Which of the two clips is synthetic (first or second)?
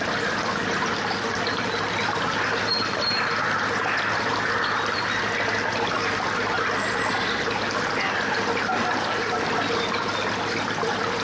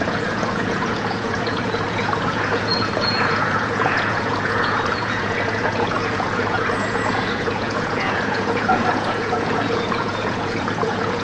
second